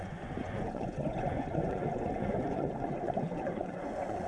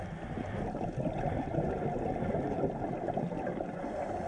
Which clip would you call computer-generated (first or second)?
first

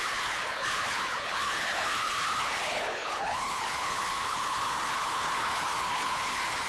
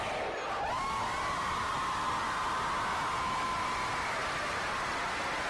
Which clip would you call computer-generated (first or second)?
first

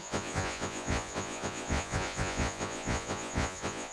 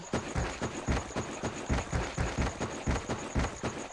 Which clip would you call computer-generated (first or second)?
first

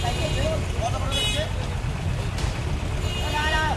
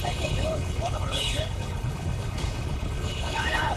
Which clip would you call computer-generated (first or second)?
second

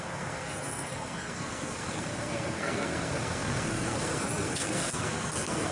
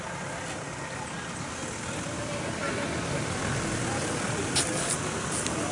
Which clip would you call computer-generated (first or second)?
first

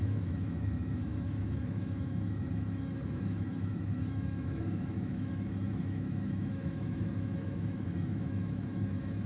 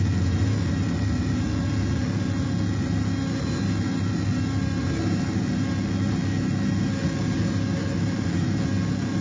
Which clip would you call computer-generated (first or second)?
first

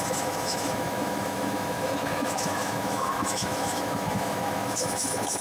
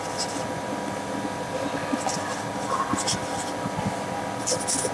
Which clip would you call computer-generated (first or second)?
first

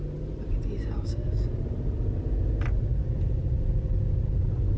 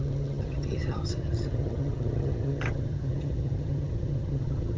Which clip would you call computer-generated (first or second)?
second